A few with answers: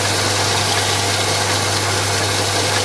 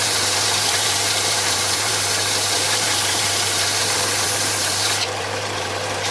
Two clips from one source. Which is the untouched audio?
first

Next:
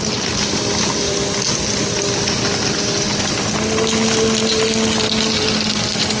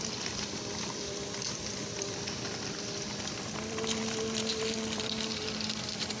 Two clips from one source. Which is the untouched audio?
first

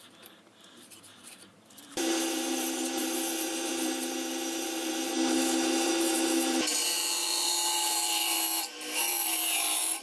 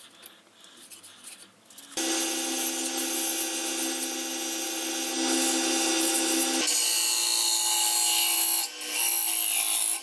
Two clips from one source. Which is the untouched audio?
second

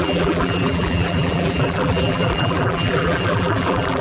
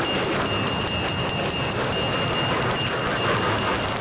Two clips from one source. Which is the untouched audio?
second